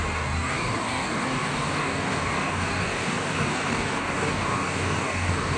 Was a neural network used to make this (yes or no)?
yes